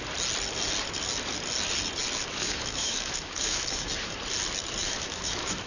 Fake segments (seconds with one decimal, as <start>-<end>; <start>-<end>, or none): 2.2-3.9; 4.8-5.7